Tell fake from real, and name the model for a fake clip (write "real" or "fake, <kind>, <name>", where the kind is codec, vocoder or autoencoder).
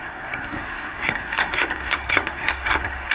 fake, codec, SNAC